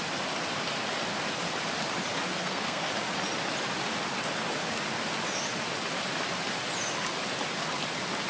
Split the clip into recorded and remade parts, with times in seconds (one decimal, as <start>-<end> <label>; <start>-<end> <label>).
0.0-2.4 recorded; 2.4-2.9 remade; 2.9-8.3 recorded